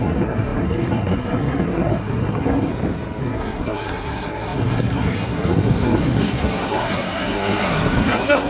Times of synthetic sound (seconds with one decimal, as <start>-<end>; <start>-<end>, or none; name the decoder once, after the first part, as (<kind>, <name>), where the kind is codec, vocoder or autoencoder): 0.0-2.7 (codec, SNAC); 3.2-8.5